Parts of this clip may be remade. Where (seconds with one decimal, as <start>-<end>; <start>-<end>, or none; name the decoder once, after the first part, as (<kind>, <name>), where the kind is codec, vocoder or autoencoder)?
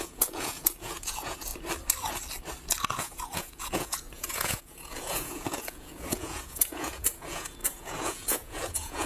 0.0-1.5 (vocoder, Vocos); 3.0-9.1